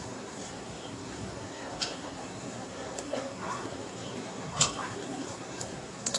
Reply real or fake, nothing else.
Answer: fake